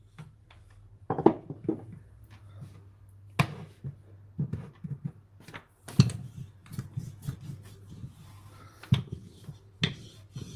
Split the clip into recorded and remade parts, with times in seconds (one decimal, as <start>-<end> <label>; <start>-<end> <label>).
0.0-10.6 recorded